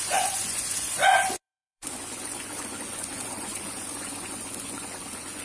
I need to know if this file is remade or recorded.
remade